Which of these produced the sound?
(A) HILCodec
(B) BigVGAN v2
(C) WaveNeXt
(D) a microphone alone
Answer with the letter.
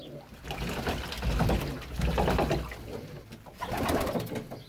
D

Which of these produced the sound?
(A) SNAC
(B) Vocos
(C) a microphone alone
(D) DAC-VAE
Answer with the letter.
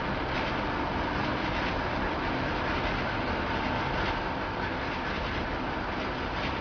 C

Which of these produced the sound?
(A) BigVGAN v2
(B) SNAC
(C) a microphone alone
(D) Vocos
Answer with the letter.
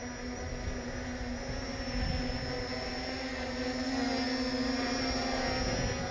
C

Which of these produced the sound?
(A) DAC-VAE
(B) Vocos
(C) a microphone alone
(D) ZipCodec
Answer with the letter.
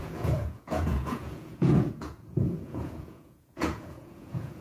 B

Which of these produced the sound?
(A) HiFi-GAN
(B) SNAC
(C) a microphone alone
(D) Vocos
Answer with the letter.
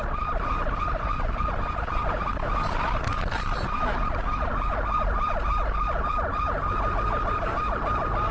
C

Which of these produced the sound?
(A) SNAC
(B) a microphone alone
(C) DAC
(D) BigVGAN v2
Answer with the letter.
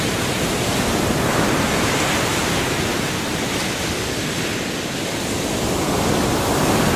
B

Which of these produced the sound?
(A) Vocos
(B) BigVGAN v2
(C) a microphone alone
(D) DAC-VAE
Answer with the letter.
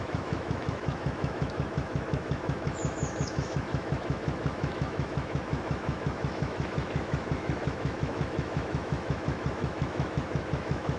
D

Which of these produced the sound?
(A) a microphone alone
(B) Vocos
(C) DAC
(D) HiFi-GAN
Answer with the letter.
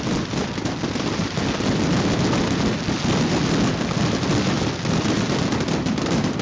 A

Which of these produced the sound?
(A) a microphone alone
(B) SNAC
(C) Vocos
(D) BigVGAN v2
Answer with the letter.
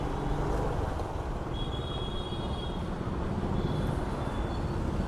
A